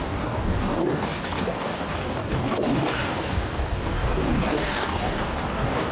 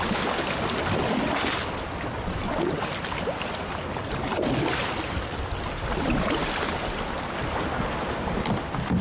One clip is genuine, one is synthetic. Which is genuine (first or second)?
second